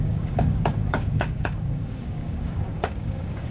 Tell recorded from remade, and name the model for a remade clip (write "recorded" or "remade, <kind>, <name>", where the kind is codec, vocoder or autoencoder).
remade, codec, DAC